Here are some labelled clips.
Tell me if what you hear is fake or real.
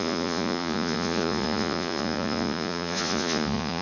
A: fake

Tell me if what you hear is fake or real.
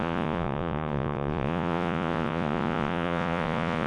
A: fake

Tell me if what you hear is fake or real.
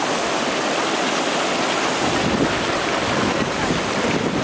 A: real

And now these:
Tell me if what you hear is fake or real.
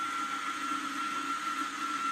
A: real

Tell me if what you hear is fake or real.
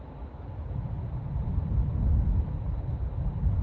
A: real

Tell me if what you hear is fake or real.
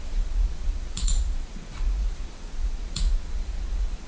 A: fake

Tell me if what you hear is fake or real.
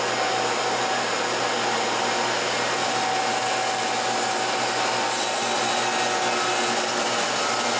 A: real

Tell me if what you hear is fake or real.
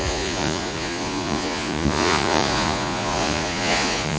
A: fake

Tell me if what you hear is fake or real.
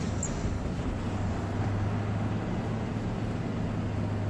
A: real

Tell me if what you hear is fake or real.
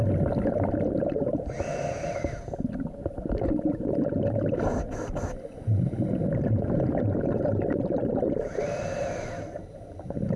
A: real